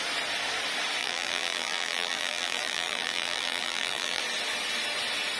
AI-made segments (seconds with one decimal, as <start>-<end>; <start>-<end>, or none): 1.0-4.2